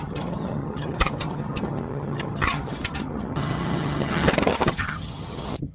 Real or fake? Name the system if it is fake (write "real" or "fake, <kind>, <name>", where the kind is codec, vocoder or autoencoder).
fake, vocoder, HiFi-GAN